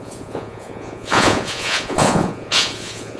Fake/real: fake